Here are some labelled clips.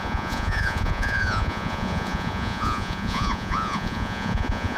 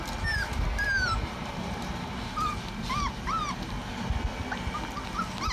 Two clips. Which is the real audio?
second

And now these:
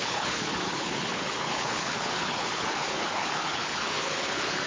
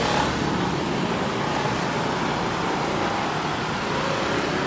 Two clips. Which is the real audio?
second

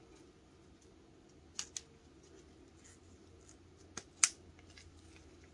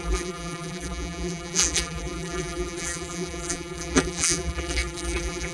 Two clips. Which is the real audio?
first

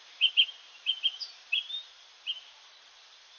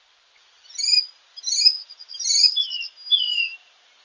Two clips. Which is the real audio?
second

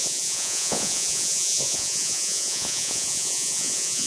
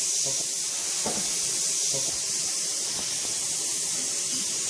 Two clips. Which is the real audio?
second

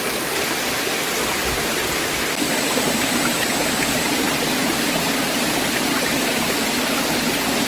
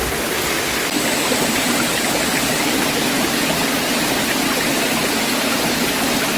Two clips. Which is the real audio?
second